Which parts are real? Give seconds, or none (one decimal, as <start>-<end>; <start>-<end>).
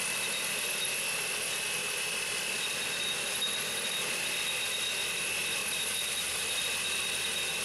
0.0-1.8; 4.1-5.6; 6.3-7.6